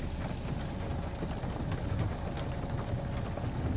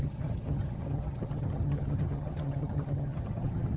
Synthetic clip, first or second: second